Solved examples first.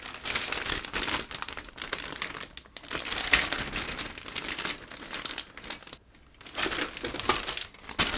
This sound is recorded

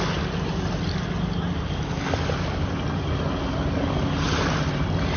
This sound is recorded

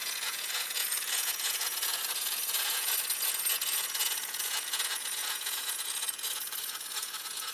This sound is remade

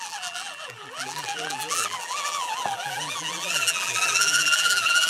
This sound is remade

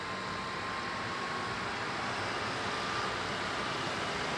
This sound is recorded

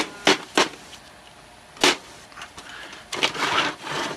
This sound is recorded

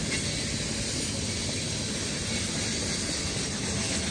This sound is recorded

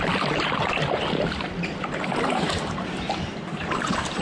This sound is remade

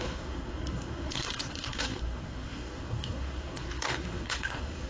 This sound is remade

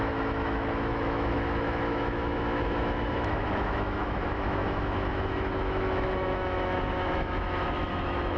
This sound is remade